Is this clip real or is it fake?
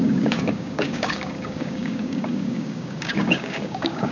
fake